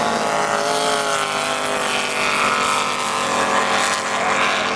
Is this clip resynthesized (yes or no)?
no